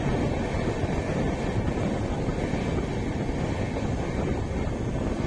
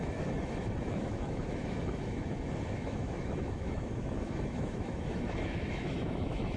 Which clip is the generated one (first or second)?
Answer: second